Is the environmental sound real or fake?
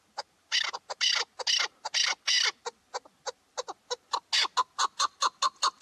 real